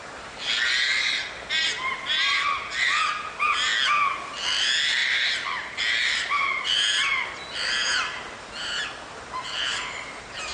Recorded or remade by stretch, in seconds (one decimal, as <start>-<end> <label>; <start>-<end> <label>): 0.0-1.2 remade; 1.2-2.2 recorded; 2.2-3.7 remade; 3.7-4.2 recorded; 4.2-10.5 remade